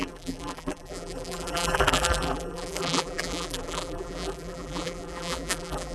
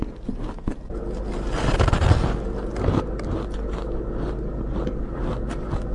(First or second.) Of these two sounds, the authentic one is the second